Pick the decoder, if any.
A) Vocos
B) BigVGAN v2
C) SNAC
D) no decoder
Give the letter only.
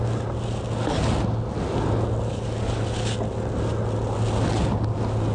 D